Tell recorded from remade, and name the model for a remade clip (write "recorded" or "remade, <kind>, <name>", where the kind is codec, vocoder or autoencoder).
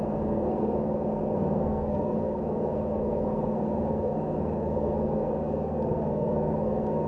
remade, codec, SNAC